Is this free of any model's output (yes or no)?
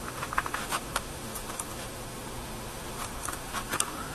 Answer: no